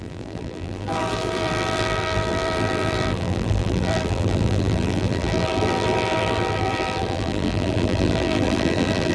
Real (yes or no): no